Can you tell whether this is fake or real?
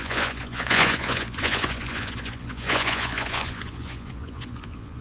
fake